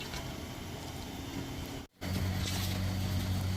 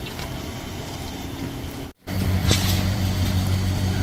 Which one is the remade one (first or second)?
second